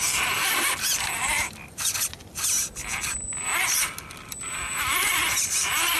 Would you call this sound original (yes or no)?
no